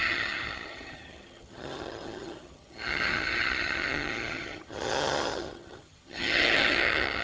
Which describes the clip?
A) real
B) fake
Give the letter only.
B